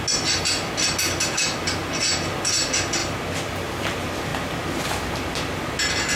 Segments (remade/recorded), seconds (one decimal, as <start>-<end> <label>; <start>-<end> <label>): 0.0-6.2 recorded